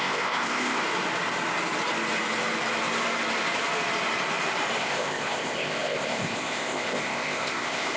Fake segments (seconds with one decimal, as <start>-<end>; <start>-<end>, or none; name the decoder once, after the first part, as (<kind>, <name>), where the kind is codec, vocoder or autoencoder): 0.0-0.8 (codec, ZipCodec); 4.8-8.0